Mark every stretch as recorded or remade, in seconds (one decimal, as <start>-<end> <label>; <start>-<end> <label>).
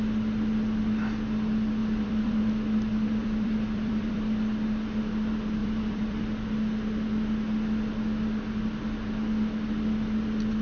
0.0-1.8 recorded; 1.8-2.4 remade; 2.4-3.2 recorded; 3.2-4.5 remade; 4.5-5.6 recorded; 5.6-6.2 remade; 6.2-10.6 recorded